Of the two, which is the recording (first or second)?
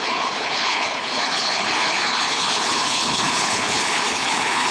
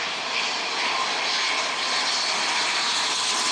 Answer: second